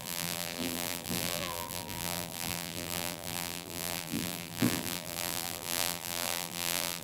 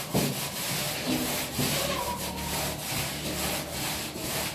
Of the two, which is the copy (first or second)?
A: first